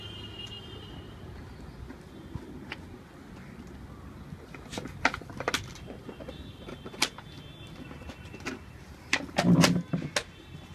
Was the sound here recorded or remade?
recorded